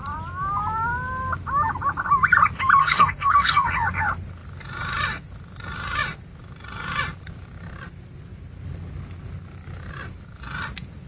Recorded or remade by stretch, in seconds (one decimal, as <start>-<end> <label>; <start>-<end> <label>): 0.0-2.8 recorded; 2.8-3.7 remade; 3.7-11.1 recorded

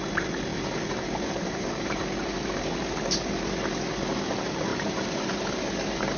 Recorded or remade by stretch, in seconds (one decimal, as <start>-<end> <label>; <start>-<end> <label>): 0.0-0.5 recorded; 0.5-2.0 remade; 2.0-4.7 recorded; 4.7-5.2 remade; 5.2-6.2 recorded

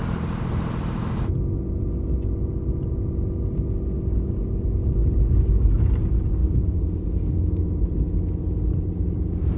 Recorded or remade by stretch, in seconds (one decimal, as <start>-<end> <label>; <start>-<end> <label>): 0.0-4.8 recorded; 4.8-5.7 remade; 5.7-6.4 recorded; 6.4-7.6 remade; 7.6-9.6 recorded

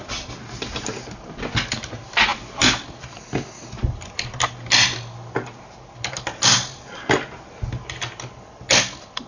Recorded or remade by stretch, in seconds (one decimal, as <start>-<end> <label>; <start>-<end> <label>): 0.0-9.3 recorded